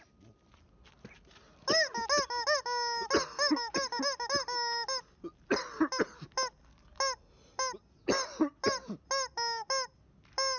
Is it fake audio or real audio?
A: real